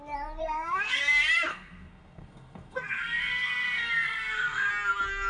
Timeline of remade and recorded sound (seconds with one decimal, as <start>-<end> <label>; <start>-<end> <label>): 0.0-0.4 recorded; 0.4-1.0 remade; 1.0-1.5 recorded; 1.5-4.7 remade; 4.7-5.3 recorded